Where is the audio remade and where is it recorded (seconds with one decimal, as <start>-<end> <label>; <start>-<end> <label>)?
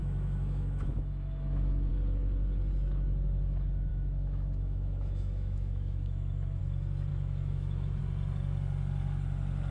0.0-1.9 remade; 1.9-3.9 recorded; 3.9-6.6 remade; 6.6-7.1 recorded; 7.1-8.0 remade; 8.0-9.7 recorded